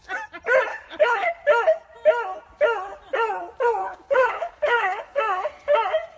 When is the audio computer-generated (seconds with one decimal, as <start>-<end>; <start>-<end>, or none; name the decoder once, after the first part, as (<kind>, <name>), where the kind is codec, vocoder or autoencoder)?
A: 0.7-1.4 (codec, HILCodec); 3.8-5.2

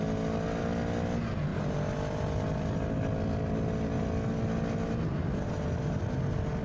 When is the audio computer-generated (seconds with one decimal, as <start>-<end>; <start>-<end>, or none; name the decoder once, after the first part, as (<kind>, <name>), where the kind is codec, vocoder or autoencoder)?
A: none

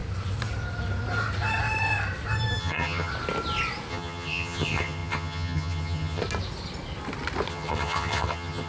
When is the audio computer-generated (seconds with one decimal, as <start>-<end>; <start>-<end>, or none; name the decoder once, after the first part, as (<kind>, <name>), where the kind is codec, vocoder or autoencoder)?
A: 2.6-3.1 (vocoder, HiFi-GAN); 3.9-6.2; 7.5-8.7

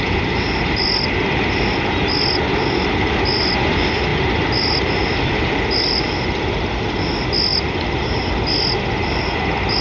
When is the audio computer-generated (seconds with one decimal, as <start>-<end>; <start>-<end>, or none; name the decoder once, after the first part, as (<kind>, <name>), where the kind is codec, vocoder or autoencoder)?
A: none

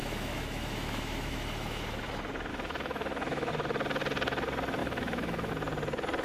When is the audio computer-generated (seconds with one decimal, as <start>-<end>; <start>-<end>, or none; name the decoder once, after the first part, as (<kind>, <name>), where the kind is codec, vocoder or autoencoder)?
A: 0.0-1.8 (autoencoder, DAC-VAE); 2.5-3.5; 4.8-5.5